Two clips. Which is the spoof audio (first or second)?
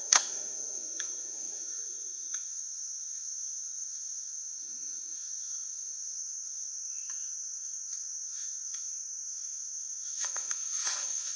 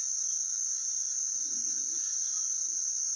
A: first